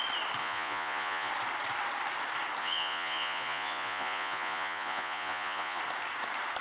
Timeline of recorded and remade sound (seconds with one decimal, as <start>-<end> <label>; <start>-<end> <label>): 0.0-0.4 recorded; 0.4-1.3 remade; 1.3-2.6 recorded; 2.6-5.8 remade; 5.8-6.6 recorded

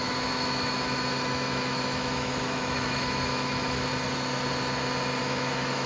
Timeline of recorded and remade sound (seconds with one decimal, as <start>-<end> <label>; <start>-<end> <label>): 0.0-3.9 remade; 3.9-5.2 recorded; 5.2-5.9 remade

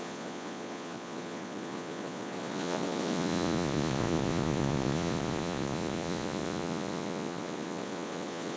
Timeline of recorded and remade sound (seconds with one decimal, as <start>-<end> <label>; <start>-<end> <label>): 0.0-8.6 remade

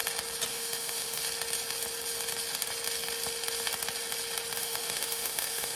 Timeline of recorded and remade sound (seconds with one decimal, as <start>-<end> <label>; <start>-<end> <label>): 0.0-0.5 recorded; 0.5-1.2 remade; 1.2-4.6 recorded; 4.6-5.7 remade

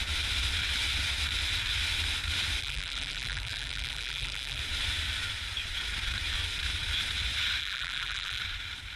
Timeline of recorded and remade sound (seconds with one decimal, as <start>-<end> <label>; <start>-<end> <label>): 0.0-2.6 recorded; 2.6-4.6 remade; 4.6-7.6 recorded; 7.6-8.4 remade; 8.4-9.0 recorded

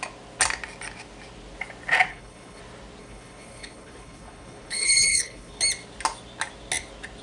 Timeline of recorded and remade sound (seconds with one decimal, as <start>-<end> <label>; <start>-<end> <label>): 0.0-2.1 recorded; 2.1-2.6 remade; 2.6-3.0 recorded; 3.0-5.6 remade; 5.6-7.2 recorded

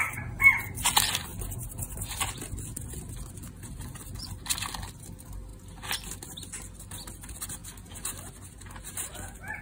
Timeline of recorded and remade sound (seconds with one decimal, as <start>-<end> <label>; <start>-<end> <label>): 0.0-9.6 recorded